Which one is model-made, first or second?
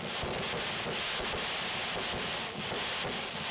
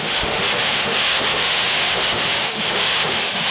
second